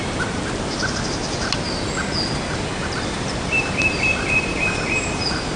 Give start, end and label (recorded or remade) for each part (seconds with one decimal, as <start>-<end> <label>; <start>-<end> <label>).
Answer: 0.0-1.2 remade; 1.2-2.5 recorded; 2.5-5.6 remade